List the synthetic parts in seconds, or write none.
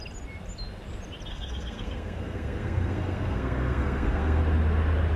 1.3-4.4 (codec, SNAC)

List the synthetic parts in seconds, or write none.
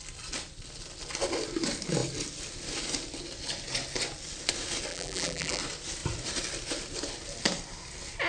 4.9-5.6 (vocoder, BigVGAN v2)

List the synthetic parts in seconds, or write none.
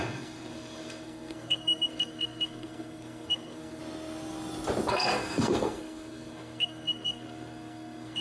0.0-3.8 (codec, SNAC); 4.9-8.2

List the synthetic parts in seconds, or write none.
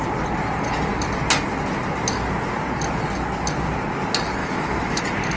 4.4-5.0 (autoencoder, DAC-VAE)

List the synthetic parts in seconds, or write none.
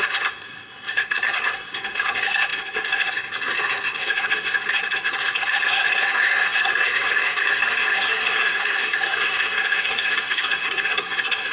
0.0-11.5 (codec, SNAC)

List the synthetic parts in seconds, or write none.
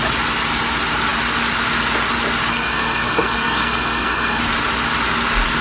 2.5-4.4 (codec, SNAC)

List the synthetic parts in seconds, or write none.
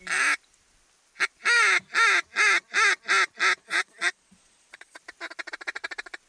3.6-5.0 (vocoder, Vocos)